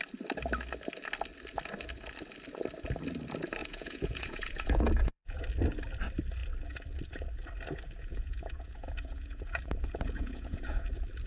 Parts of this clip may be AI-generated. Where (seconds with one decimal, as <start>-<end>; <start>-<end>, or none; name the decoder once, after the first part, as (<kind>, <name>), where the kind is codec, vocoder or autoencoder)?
3.6-5.4 (vocoder, Vocos); 8.0-10.9